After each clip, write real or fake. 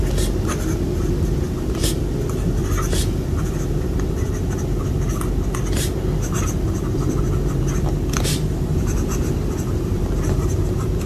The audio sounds fake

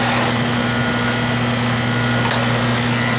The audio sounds real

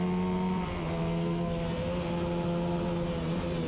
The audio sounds real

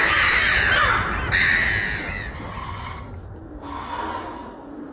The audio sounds real